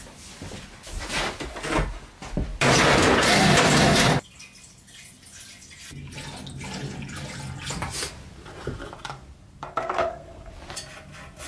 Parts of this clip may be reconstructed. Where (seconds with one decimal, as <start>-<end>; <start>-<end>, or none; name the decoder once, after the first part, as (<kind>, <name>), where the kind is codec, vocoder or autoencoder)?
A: 9.7-10.5 (codec, SNAC)